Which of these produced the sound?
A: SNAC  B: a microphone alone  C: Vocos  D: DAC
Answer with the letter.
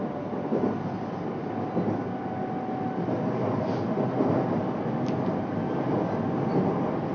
B